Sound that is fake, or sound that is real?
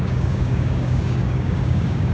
fake